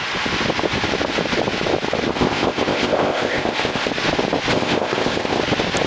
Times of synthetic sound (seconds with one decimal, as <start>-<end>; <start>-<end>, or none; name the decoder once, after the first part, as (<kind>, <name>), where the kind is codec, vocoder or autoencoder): 2.1-3.9 (codec, ZipCodec); 4.5-5.4